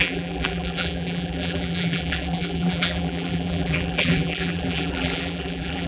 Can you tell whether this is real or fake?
fake